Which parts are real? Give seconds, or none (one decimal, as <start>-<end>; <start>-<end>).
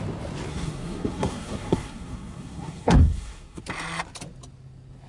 0.0-0.5; 3.6-5.1